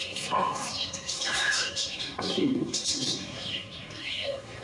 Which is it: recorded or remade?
remade